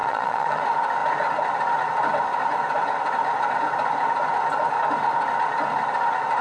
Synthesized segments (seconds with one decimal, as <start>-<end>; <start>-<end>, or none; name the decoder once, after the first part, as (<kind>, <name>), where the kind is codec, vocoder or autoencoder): 0.0-0.6 (vocoder, Vocos)